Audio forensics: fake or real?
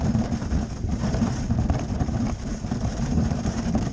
fake